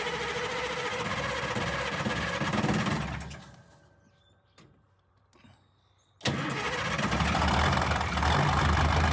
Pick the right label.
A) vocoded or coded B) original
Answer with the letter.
B